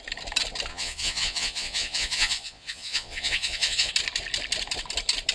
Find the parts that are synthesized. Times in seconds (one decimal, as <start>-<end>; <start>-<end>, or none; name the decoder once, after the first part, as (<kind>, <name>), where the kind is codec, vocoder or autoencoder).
0.7-3.9 (vocoder, Vocos)